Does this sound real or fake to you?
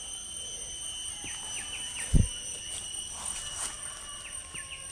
real